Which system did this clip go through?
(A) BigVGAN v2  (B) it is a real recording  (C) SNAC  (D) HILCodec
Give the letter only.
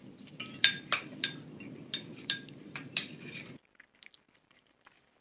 A